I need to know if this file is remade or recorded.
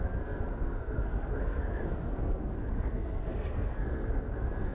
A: remade